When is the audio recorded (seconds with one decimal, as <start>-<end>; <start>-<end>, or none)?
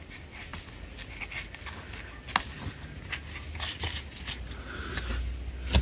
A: 0.0-5.8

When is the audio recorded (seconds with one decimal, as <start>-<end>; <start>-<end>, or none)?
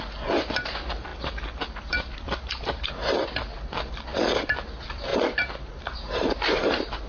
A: 0.0-1.1; 2.9-4.1; 4.6-5.1; 5.8-7.1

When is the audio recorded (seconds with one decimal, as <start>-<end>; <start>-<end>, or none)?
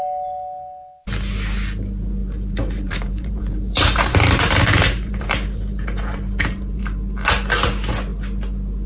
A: 0.0-2.2; 6.8-8.9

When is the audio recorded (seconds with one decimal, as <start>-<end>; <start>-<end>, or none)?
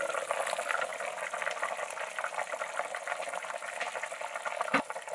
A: 0.0-5.1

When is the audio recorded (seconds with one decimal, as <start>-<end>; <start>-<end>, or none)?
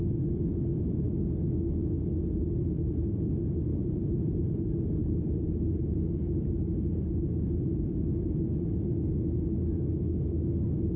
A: 0.0-2.6; 3.3-3.7; 4.5-5.0; 7.9-11.0